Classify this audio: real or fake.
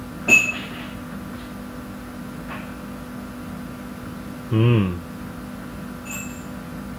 real